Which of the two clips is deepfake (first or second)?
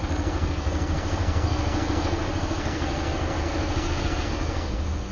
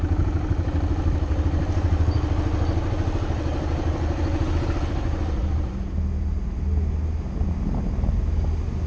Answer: first